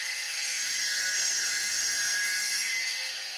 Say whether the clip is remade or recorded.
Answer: remade